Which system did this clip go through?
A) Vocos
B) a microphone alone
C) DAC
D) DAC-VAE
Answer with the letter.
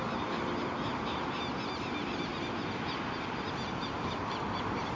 B